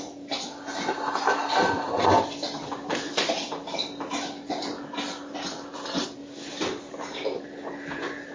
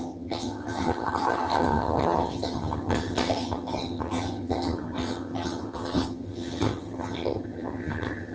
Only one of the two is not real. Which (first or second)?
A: second